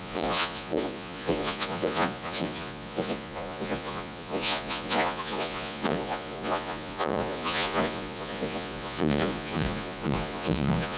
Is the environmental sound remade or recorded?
remade